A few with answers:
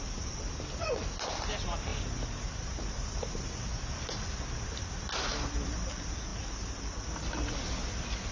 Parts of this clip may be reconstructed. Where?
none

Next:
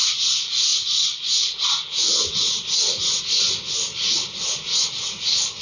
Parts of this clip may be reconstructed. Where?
none

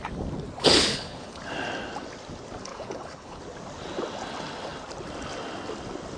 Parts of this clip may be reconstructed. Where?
0.9-1.4 (codec, HILCodec); 2.7-3.4

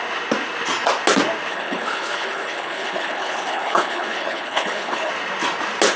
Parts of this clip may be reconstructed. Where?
1.5-5.1 (codec, HILCodec)

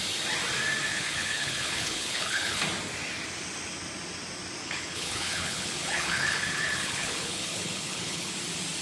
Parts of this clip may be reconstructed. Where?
0.9-2.6 (codec, HILCodec); 4.6-8.3

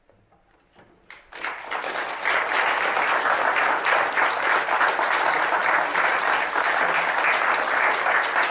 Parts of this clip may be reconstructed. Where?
none

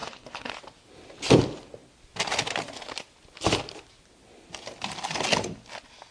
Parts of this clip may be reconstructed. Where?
0.0-0.5 (codec, HILCodec)